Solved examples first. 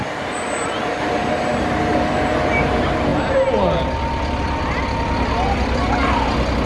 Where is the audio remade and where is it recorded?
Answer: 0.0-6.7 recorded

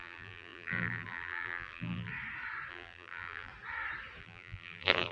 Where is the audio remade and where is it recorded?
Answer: 0.0-2.1 remade; 2.1-2.7 recorded; 2.7-3.5 remade; 3.5-4.2 recorded; 4.2-5.1 remade

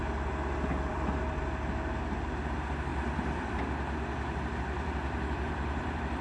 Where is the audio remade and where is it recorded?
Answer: 0.0-0.9 recorded; 0.9-1.4 remade; 1.4-2.9 recorded; 2.9-3.6 remade; 3.6-4.5 recorded; 4.5-6.2 remade

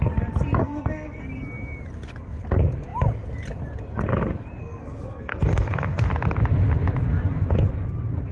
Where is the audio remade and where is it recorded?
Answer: 0.0-0.6 recorded; 0.6-1.2 remade; 1.2-4.6 recorded; 4.6-6.0 remade; 6.0-8.3 recorded

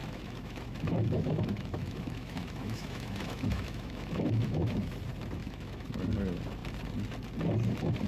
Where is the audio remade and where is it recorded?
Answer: 0.0-4.9 remade; 4.9-5.4 recorded; 5.4-5.9 remade; 5.9-8.1 recorded

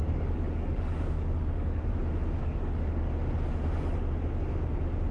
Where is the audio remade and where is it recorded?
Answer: 0.0-1.9 remade; 1.9-2.4 recorded; 2.4-3.1 remade; 3.1-5.1 recorded